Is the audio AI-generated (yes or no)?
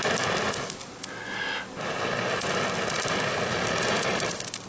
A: no